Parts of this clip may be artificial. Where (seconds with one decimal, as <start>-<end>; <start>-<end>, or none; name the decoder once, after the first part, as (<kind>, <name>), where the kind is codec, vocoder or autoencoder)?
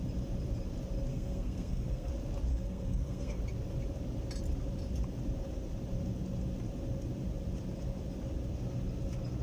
1.1-2.1 (codec, SNAC); 2.5-3.4